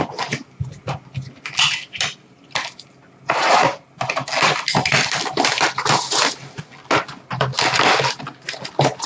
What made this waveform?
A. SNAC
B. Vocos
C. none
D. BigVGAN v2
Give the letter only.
C